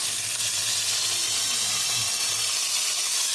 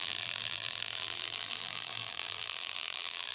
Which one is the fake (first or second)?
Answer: second